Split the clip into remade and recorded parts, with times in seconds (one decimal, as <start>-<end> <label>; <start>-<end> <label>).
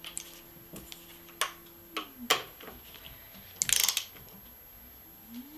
0.0-5.6 recorded